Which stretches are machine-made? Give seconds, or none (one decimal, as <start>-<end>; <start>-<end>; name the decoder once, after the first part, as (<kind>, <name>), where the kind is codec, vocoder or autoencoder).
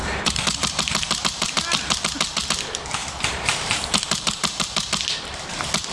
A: 0.0-2.0 (vocoder, BigVGAN v2); 3.0-5.0